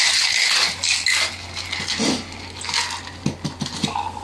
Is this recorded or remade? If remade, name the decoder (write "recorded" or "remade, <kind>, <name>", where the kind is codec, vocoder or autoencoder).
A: recorded